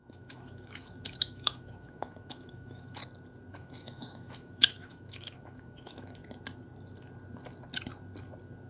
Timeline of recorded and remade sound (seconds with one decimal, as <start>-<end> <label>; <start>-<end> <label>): 0.0-3.0 remade; 3.0-3.5 recorded; 3.5-6.2 remade; 6.2-8.7 recorded